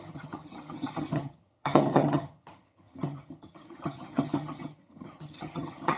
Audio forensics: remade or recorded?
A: remade